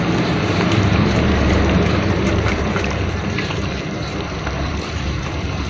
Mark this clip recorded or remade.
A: remade